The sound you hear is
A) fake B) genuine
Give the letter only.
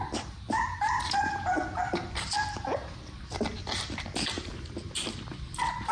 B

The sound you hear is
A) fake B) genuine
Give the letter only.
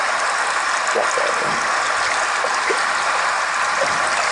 B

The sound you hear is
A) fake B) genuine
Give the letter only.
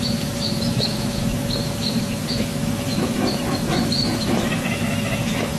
A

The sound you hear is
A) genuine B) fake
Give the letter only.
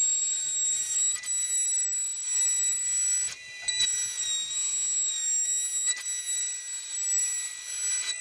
A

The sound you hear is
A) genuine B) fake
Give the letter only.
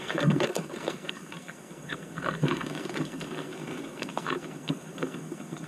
B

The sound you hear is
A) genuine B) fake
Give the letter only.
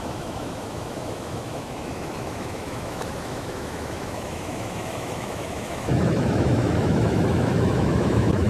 B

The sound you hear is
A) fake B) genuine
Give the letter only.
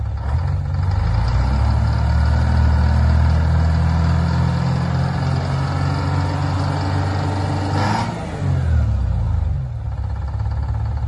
B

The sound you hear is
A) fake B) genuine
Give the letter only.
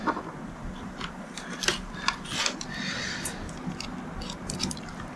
B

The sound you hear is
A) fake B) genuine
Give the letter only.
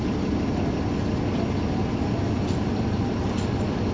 B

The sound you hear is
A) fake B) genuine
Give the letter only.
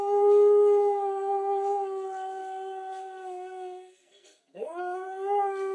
A